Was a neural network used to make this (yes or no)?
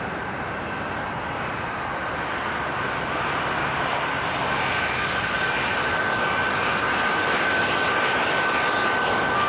no